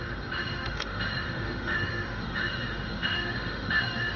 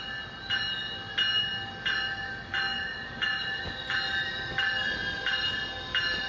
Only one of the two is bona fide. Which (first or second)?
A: second